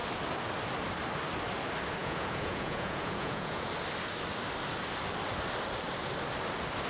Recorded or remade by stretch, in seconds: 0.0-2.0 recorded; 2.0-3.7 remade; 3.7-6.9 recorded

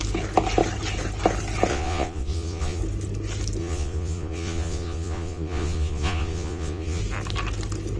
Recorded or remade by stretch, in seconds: 0.0-1.7 recorded; 1.7-2.8 remade; 2.8-3.6 recorded; 3.6-7.0 remade; 7.0-8.0 recorded

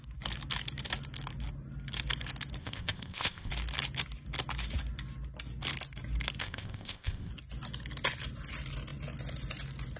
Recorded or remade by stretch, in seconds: 0.0-2.6 recorded; 2.6-3.5 remade; 3.5-6.4 recorded; 6.4-7.3 remade; 7.3-10.0 recorded

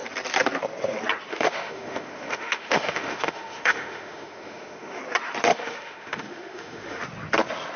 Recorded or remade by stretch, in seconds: 0.0-1.3 recorded; 1.3-5.0 remade; 5.0-5.5 recorded; 5.5-7.0 remade; 7.0-7.8 recorded

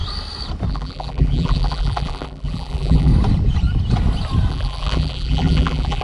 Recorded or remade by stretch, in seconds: 0.0-0.7 recorded; 0.7-3.1 remade; 3.1-4.5 recorded; 4.5-6.0 remade